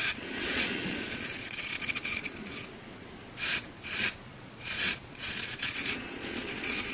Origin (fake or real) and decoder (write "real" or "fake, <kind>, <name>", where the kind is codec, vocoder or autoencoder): fake, vocoder, Vocos